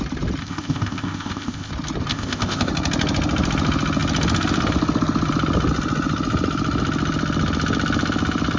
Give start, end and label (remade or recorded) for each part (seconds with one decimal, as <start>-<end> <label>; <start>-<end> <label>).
0.0-0.4 recorded; 0.4-1.7 remade; 1.7-2.1 recorded; 2.1-2.7 remade; 2.7-8.6 recorded